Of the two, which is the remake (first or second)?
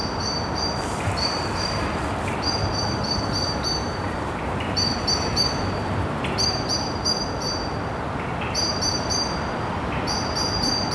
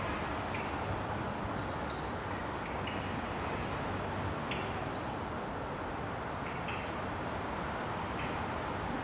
first